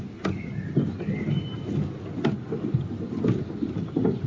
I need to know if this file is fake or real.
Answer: real